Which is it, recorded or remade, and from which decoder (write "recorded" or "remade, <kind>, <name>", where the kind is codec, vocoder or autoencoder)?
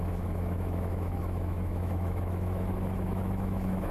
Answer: remade, autoencoder, DAC-VAE